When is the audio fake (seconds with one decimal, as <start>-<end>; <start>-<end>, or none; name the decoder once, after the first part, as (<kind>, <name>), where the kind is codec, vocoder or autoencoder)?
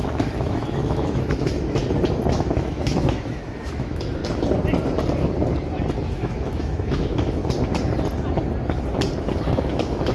0.0-1.8 (autoencoder, DAC-VAE); 2.3-4.2; 6.0-7.4; 9.4-10.1